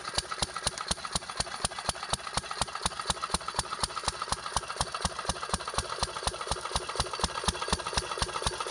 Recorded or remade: recorded